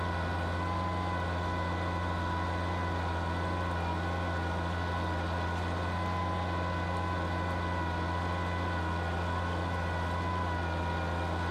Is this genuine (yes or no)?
yes